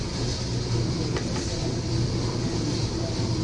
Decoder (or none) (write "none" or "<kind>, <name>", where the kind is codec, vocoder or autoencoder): none